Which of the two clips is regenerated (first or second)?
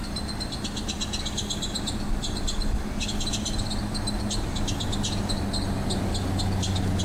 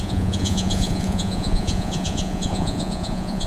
second